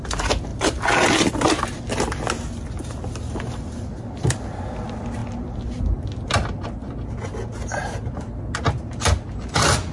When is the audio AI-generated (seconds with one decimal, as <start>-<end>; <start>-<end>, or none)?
0.5-1.8